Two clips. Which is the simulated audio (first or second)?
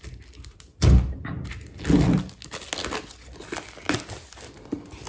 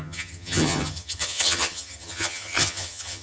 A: second